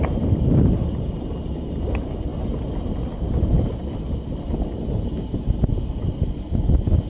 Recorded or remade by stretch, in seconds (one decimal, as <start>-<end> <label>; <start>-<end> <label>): 0.0-7.1 recorded